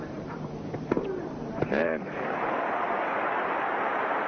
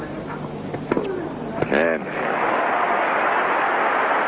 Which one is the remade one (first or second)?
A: first